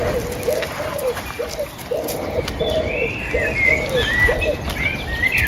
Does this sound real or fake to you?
real